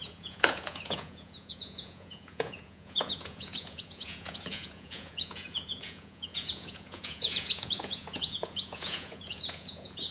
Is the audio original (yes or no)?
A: no